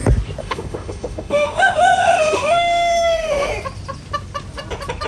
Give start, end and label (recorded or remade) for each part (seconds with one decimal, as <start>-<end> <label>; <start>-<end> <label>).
0.0-0.4 recorded; 0.4-3.5 remade; 3.5-5.1 recorded